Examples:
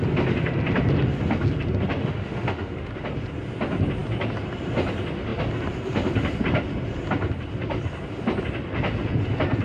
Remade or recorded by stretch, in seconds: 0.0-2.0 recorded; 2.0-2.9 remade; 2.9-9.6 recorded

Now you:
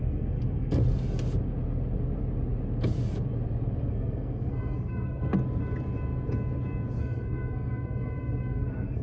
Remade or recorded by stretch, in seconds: 0.0-0.8 remade; 0.8-3.9 recorded; 3.9-5.3 remade; 5.3-7.0 recorded; 7.0-9.0 remade